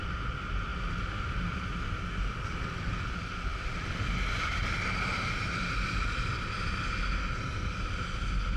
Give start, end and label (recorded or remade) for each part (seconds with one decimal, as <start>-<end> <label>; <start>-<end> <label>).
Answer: 0.0-0.7 remade; 0.7-2.3 recorded; 2.3-6.3 remade; 6.3-7.4 recorded; 7.4-8.6 remade